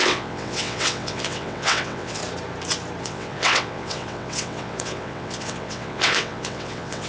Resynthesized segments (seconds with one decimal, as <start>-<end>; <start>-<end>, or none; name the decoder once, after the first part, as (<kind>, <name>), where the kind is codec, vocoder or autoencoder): 0.0-2.2 (vocoder, WaveNeXt); 3.0-7.1